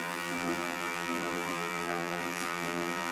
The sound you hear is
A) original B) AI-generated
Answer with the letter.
B